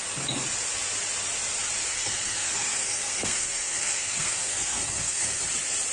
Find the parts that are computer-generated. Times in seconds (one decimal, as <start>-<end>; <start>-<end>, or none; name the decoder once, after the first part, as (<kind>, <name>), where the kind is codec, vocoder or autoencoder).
1.9-5.4 (codec, SNAC)